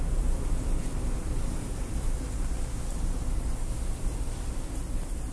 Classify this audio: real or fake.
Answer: real